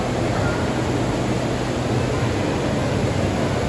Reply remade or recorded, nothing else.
recorded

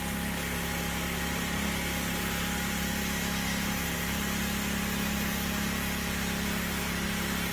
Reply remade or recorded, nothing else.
recorded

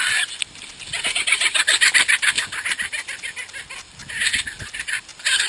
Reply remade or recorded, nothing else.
recorded